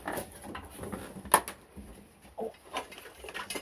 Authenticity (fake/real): real